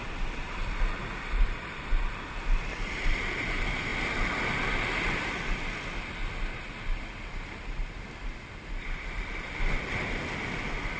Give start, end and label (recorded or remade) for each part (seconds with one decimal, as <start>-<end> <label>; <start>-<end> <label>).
0.0-11.0 recorded